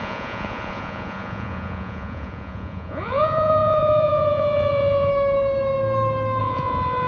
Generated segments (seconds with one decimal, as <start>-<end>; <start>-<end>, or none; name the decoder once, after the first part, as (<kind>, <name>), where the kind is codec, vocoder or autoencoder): 0.0-5.1 (vocoder, Vocos); 6.4-7.1